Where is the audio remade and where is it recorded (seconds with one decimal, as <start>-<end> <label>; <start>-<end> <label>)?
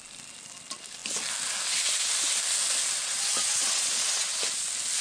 0.0-3.0 recorded; 3.0-4.4 remade; 4.4-5.0 recorded